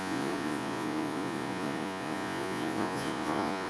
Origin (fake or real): fake